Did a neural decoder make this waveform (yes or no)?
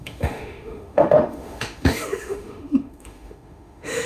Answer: yes